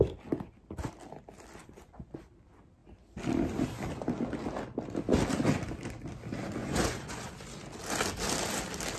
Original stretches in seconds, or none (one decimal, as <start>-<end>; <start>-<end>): 0.0-1.6; 2.2-6.6; 7.3-9.0